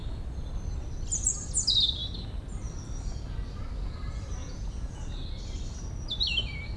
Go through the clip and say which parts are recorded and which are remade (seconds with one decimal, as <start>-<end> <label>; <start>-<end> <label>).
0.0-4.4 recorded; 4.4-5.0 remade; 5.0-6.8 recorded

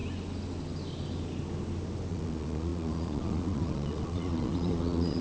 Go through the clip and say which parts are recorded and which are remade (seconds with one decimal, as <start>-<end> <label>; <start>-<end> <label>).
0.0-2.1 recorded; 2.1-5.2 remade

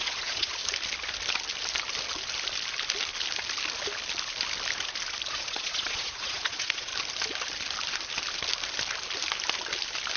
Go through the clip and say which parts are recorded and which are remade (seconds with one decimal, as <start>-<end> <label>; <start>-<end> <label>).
0.0-0.6 remade; 0.6-5.3 recorded; 5.3-6.9 remade; 6.9-10.2 recorded

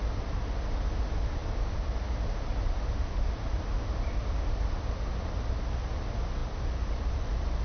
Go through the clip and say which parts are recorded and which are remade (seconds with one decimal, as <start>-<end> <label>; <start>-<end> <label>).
0.0-7.6 recorded